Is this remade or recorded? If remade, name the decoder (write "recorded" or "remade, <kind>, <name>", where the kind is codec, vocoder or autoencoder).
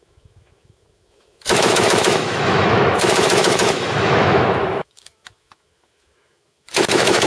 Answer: remade, autoencoder, DAC-VAE